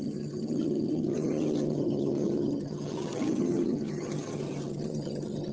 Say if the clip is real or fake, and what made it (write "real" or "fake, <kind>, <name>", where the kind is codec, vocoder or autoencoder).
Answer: fake, vocoder, HiFi-GAN